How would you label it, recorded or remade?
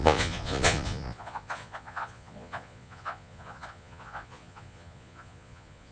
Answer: remade